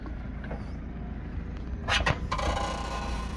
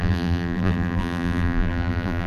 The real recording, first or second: first